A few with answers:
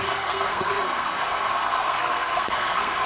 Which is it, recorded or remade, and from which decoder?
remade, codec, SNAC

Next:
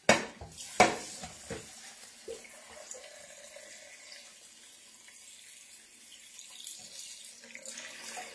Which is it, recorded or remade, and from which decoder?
recorded